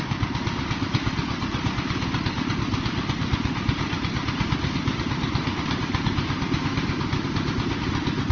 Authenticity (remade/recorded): recorded